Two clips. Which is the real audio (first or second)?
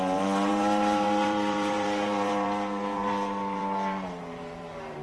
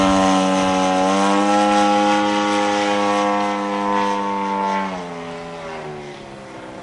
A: second